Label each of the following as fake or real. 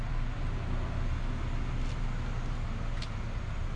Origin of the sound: real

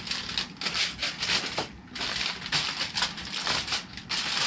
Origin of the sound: real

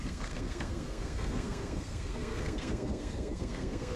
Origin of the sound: fake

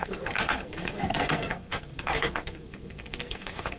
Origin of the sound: fake